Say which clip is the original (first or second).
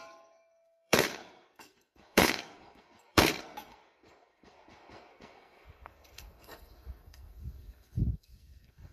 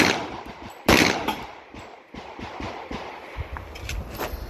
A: second